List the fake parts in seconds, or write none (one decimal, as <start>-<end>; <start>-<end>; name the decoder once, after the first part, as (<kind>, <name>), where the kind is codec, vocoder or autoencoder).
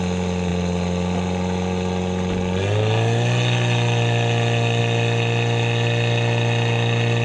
none